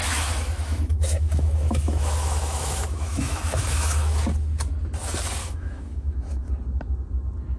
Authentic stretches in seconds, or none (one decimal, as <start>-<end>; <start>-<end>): 4.2-5.4; 6.5-7.6